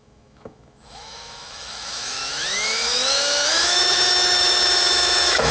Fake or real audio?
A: fake